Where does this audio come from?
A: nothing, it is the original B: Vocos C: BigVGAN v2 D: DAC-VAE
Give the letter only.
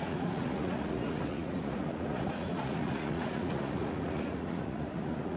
B